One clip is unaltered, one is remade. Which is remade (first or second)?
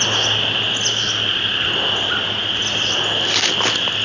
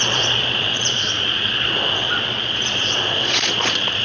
second